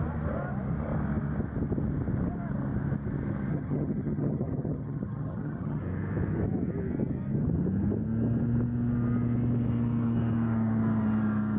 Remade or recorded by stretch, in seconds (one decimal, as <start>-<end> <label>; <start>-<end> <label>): 0.0-3.5 recorded; 3.5-5.8 remade; 5.8-11.6 recorded